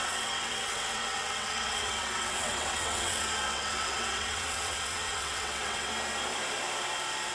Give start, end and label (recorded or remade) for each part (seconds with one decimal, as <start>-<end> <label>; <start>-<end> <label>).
0.0-5.9 remade; 5.9-7.3 recorded